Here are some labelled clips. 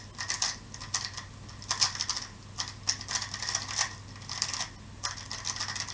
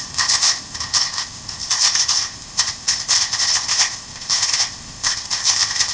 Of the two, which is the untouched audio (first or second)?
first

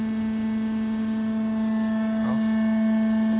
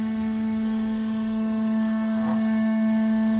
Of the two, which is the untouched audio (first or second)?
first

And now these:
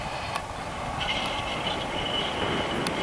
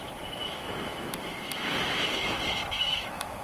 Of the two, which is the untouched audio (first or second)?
first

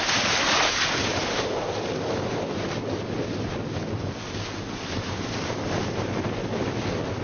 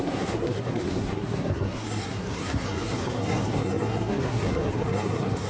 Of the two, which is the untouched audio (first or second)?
first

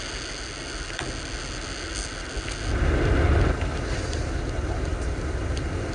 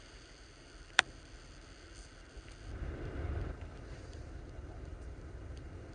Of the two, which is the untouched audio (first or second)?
first